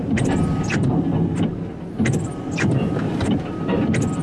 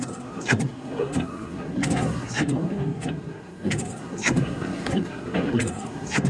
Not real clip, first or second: second